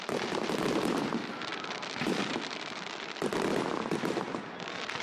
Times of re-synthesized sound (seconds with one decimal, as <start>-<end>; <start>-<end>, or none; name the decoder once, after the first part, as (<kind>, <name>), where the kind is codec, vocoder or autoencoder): 1.5-2.4 (vocoder, BigVGAN v2)